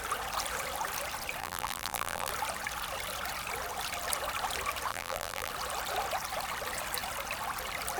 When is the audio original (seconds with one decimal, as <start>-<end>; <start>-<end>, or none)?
0.0-1.4; 2.3-4.9; 5.5-8.0